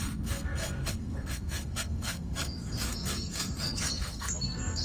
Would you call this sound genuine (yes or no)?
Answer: no